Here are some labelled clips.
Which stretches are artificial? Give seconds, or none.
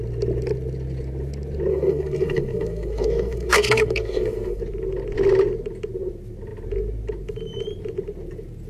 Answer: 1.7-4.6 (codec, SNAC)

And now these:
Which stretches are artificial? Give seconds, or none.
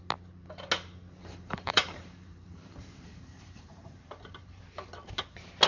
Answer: 1.2-4.6 (vocoder, BigVGAN v2)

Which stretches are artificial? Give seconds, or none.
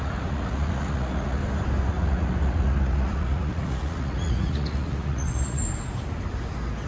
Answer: 0.0-1.4 (vocoder, Vocos); 1.9-5.6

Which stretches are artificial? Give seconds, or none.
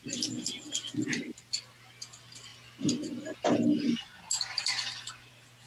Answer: none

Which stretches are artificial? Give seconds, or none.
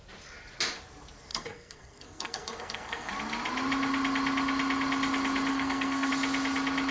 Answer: 1.3-3.1 (codec, SNAC); 5.5-6.1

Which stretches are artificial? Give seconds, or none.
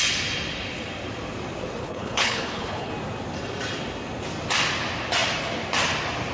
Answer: 1.8-2.9 (codec, HILCodec)